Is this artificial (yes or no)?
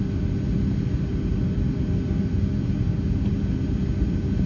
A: no